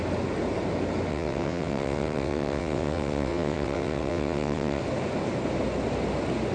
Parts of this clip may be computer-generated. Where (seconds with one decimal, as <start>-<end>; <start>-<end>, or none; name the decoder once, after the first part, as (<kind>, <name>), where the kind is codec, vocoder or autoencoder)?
1.1-4.8 (vocoder, WaveNeXt)